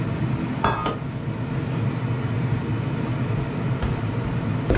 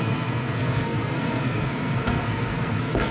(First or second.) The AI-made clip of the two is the second